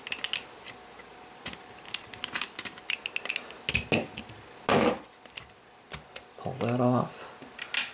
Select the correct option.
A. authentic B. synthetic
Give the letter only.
A